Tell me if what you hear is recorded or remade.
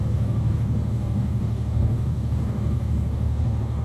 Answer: remade